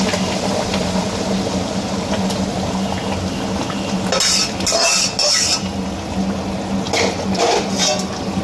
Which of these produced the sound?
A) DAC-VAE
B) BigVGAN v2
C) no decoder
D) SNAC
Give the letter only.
C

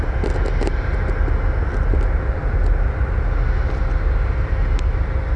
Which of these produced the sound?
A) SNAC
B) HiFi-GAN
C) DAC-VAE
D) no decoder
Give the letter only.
D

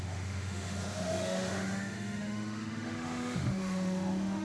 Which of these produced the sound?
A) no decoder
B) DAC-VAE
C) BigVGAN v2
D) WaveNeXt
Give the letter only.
B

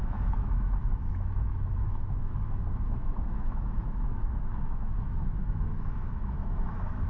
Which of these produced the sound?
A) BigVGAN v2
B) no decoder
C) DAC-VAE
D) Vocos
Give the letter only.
C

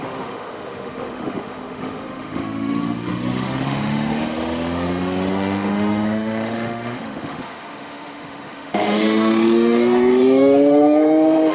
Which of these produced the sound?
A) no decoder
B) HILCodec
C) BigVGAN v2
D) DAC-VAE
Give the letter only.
D